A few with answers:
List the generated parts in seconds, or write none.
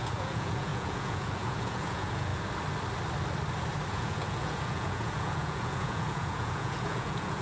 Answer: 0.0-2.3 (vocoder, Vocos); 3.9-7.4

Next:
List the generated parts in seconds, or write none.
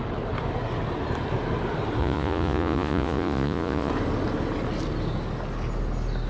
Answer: 2.0-3.9 (vocoder, Vocos)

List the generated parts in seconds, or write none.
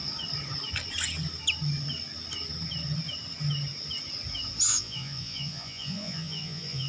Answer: 4.7-6.9 (vocoder, Vocos)